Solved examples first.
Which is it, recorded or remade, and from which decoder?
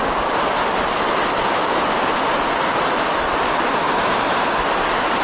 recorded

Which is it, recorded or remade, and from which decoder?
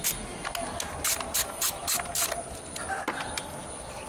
recorded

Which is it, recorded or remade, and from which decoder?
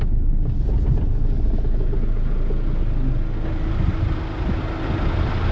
recorded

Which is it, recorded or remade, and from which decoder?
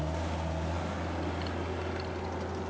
recorded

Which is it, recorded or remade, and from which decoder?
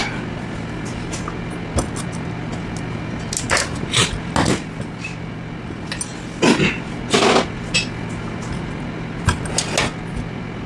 recorded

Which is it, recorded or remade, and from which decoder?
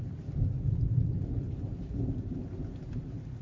recorded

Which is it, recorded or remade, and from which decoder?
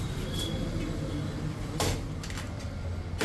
recorded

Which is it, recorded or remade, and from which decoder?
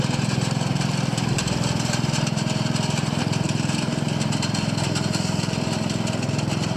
remade, vocoder, BigVGAN v2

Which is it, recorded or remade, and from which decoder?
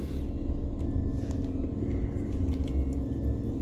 recorded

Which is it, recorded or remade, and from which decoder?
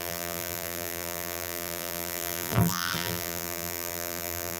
remade, vocoder, BigVGAN v2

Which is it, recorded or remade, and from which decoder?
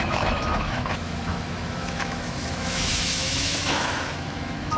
remade, autoencoder, DAC-VAE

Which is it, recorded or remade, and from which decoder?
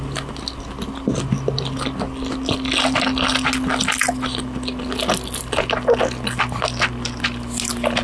recorded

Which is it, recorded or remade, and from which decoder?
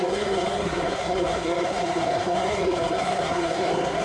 remade, codec, SNAC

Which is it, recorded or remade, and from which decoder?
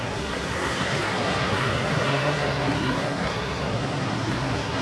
remade, codec, SNAC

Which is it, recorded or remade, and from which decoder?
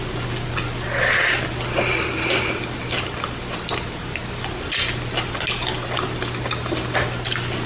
recorded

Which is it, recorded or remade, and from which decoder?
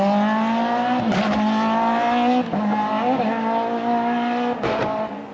recorded